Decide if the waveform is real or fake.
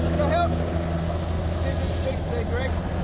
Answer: real